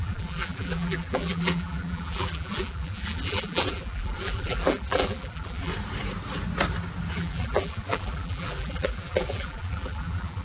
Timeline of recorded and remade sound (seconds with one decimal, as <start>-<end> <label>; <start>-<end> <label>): 0.0-5.7 remade; 5.7-7.1 recorded; 7.1-10.4 remade